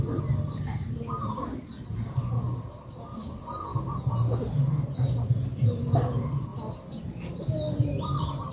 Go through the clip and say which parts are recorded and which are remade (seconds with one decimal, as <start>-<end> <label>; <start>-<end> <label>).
0.0-3.7 remade; 3.7-4.4 recorded; 4.4-6.5 remade; 6.5-7.0 recorded; 7.0-8.5 remade